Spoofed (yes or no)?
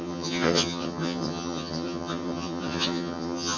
yes